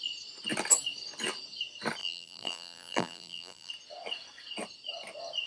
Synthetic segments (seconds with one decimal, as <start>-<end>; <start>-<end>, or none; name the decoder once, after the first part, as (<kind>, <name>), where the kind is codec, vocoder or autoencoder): 2.0-3.7 (vocoder, BigVGAN v2)